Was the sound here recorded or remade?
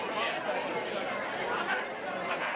recorded